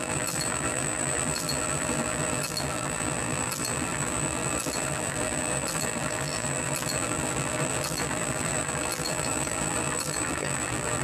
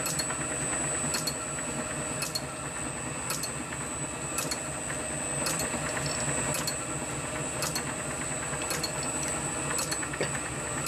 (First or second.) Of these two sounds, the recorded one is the second